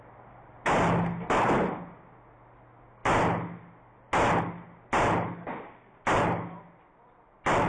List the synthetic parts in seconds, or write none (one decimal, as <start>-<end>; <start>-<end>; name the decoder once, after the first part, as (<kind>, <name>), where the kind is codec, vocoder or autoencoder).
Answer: none